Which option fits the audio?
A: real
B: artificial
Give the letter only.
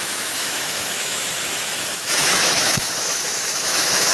B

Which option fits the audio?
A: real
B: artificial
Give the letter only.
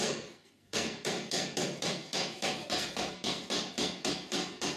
B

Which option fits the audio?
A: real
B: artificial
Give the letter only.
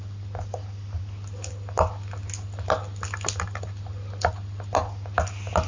A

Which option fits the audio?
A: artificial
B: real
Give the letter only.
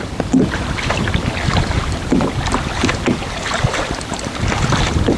A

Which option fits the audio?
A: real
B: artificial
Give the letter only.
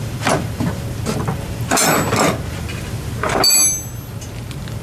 A